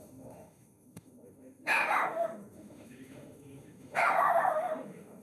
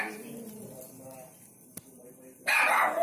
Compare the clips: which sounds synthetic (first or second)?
first